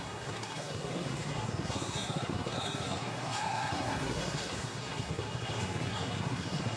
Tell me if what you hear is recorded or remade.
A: remade